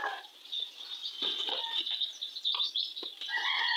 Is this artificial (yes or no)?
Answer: no